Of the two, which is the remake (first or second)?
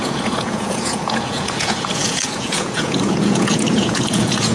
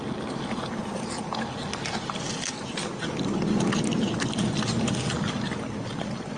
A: first